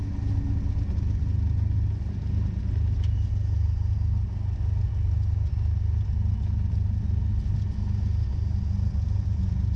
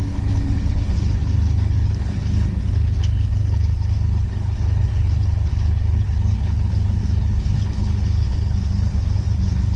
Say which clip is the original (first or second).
first